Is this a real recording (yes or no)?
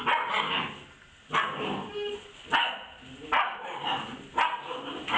yes